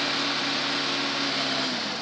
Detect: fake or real real